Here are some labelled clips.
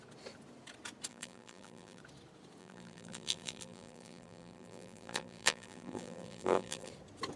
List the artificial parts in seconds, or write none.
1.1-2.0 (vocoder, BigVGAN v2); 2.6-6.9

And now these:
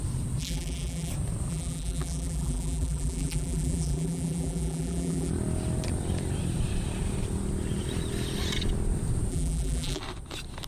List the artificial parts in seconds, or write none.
0.4-1.1 (vocoder, BigVGAN v2); 1.5-5.3; 9.3-10.0

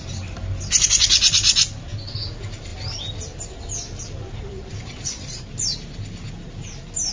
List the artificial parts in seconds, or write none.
none

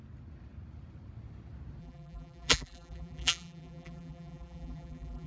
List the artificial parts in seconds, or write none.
1.8-5.3 (vocoder, BigVGAN v2)